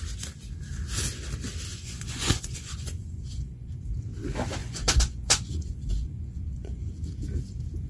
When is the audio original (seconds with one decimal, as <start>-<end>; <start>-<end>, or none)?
0.0-1.7; 3.7-4.6; 6.9-7.9